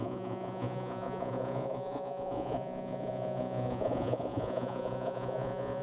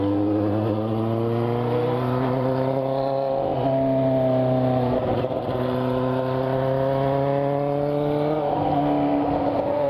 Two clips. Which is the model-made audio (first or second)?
first